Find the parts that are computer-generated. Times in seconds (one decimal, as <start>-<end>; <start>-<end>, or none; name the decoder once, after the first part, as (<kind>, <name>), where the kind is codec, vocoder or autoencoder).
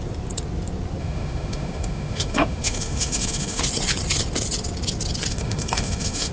1.0-3.6 (autoencoder, DAC-VAE); 5.3-6.3